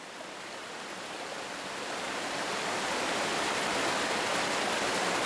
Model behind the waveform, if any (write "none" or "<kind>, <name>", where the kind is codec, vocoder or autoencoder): vocoder, BigVGAN v2